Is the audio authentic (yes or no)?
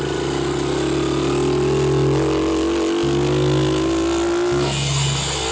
yes